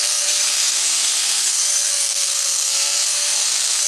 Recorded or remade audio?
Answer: remade